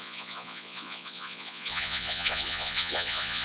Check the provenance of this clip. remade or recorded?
remade